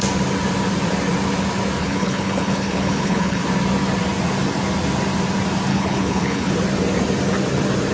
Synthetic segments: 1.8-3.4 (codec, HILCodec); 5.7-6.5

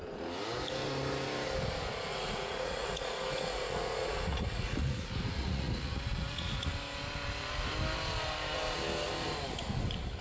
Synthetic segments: 2.1-6.7 (vocoder, Vocos)

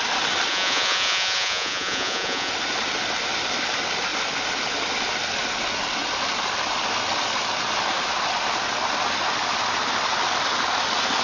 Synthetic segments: 0.5-2.5 (vocoder, Vocos)

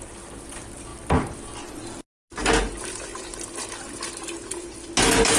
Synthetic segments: none

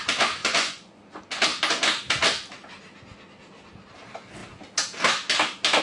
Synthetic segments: 0.4-1.2 (vocoder, Vocos)

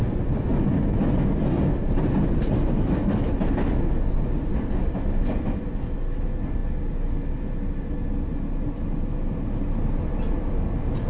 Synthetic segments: none

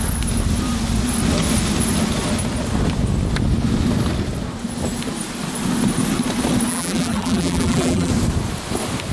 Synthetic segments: 6.7-8.1 (vocoder, BigVGAN v2)

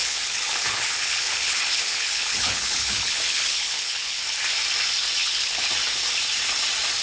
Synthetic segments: 0.0-4.2 (codec, HILCodec); 5.2-5.7